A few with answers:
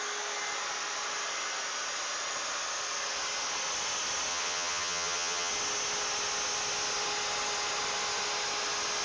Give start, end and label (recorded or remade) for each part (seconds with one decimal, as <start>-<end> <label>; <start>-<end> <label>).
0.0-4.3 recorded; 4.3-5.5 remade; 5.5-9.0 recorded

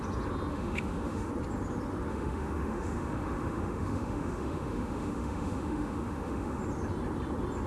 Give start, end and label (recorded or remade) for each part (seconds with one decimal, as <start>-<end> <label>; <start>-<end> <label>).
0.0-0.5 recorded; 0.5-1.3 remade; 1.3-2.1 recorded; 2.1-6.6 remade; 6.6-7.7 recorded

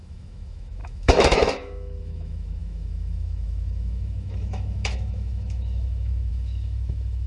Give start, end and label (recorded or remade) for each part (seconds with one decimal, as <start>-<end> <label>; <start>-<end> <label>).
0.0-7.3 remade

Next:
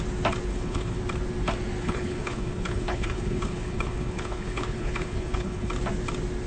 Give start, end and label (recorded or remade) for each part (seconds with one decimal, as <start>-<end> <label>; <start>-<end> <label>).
0.0-0.5 recorded; 0.5-1.0 remade; 1.0-1.8 recorded; 1.8-5.7 remade; 5.7-6.5 recorded

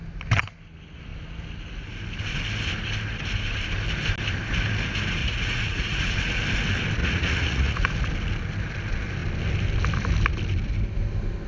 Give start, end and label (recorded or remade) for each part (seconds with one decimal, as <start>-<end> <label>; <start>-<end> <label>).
0.0-5.2 recorded; 5.2-6.4 remade; 6.4-7.0 recorded; 7.0-8.0 remade; 8.0-11.5 recorded

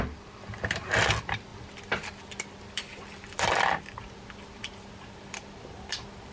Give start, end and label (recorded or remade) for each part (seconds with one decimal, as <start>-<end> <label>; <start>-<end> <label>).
0.0-6.3 remade

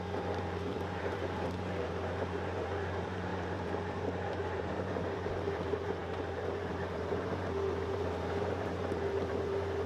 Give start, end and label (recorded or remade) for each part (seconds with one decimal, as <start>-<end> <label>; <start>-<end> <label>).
0.0-9.9 remade